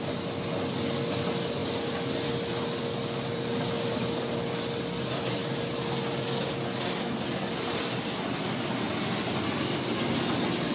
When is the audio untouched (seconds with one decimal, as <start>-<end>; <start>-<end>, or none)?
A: 0.0-10.7